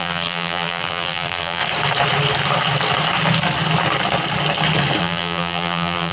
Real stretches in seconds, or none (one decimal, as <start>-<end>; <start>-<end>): 1.6-5.0